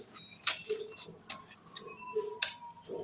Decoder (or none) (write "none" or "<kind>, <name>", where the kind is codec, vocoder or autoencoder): none